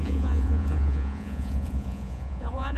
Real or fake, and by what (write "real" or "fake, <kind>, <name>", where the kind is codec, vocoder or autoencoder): fake, vocoder, Vocos